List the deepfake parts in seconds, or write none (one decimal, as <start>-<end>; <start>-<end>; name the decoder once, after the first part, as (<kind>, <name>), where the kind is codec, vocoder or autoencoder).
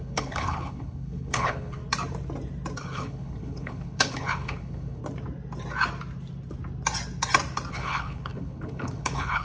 0.0-1.8 (codec, HILCodec); 2.8-5.0; 7.7-9.4